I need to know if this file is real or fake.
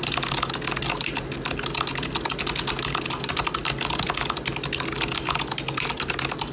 real